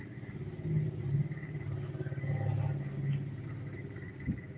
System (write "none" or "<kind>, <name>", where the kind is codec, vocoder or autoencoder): none